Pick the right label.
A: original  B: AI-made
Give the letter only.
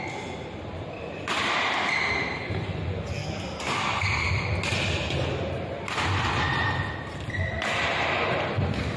A